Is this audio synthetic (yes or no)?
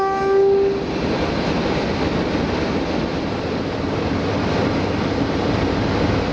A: no